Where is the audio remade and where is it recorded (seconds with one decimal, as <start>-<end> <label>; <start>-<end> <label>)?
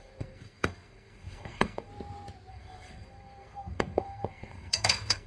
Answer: 0.0-1.9 remade; 1.9-2.5 recorded; 2.5-5.3 remade